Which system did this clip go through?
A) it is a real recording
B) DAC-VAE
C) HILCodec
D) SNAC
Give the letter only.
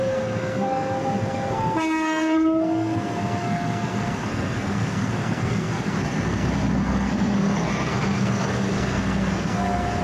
D